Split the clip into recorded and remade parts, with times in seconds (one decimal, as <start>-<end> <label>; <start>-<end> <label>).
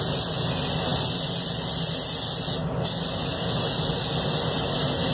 0.0-5.1 recorded